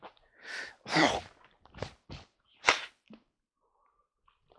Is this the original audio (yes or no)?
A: no